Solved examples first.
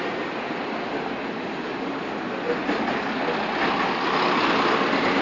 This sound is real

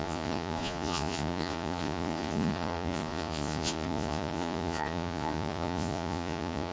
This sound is fake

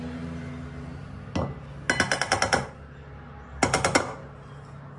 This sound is real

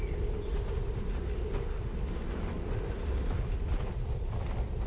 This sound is real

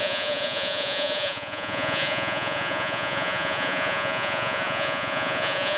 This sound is fake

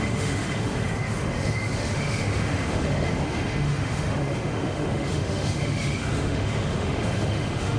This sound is fake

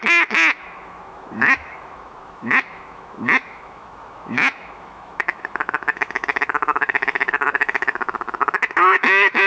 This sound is fake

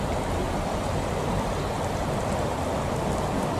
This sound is real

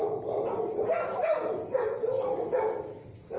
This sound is real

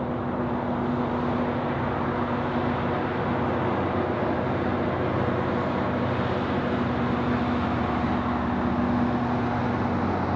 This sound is real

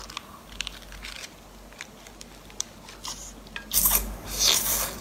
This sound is real